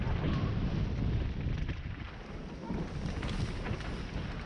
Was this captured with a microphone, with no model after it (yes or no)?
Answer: yes